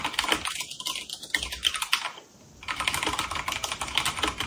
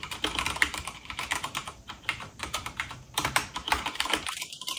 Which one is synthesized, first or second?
second